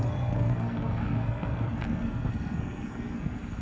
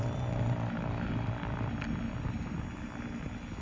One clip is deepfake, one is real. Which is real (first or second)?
second